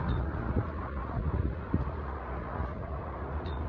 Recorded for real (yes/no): no